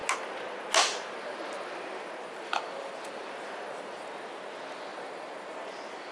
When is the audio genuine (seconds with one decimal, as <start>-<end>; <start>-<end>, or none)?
0.0-6.1